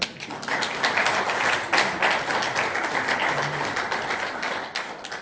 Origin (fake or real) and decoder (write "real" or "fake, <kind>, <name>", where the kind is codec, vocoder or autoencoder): real